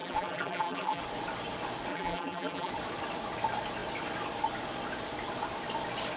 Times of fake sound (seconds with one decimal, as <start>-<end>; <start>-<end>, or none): 0.0-1.0; 1.9-2.7